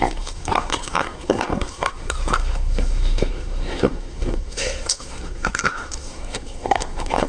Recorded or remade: remade